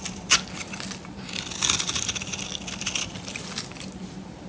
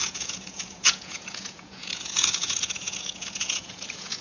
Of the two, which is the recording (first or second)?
first